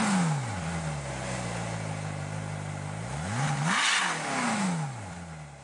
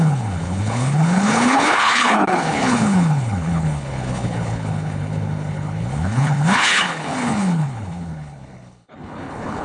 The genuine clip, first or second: first